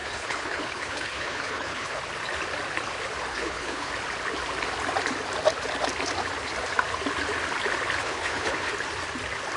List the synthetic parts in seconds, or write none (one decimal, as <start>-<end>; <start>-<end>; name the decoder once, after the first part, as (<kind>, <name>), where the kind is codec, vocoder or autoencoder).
0.0-2.0 (codec, HILCodec); 3.3-3.9; 8.0-8.7